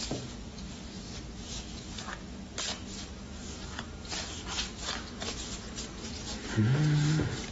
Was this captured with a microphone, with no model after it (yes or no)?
yes